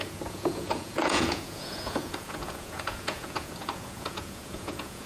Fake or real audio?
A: fake